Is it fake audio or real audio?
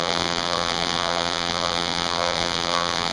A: fake